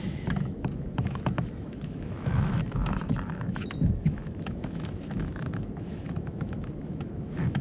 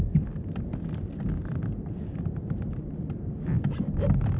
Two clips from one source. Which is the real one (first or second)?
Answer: second